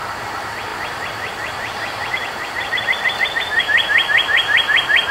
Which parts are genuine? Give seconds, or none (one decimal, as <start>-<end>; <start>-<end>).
none